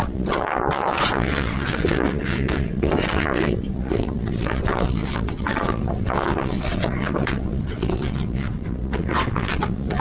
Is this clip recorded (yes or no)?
no